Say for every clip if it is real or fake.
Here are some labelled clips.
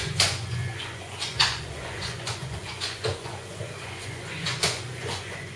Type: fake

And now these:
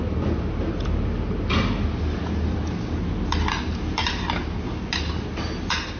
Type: real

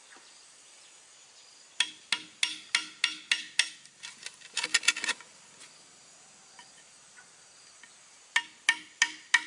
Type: real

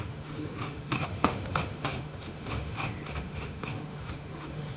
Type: fake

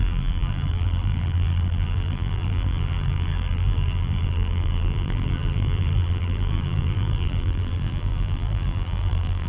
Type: fake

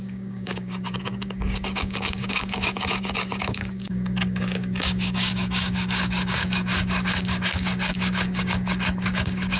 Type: fake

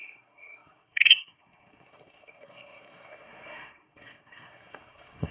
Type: fake